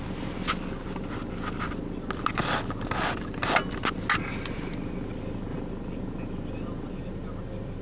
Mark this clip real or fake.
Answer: real